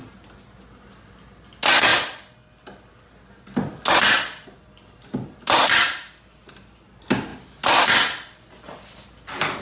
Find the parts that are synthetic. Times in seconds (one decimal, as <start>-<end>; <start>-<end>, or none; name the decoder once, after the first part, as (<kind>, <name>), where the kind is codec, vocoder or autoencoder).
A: none